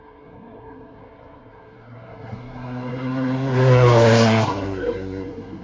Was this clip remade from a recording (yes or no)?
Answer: yes